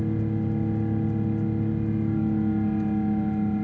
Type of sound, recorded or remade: recorded